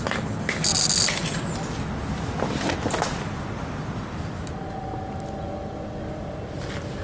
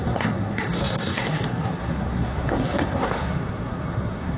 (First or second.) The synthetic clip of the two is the second